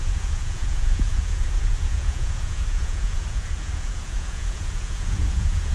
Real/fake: fake